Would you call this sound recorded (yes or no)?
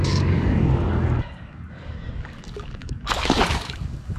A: no